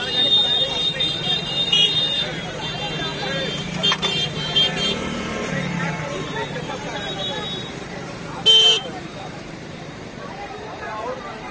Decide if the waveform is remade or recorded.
remade